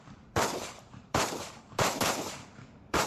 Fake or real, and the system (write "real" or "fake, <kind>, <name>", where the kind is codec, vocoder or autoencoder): fake, vocoder, BigVGAN v2